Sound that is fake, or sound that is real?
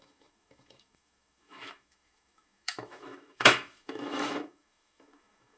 fake